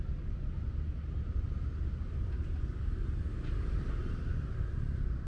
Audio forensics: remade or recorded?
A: recorded